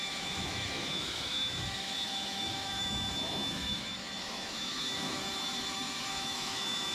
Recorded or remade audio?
remade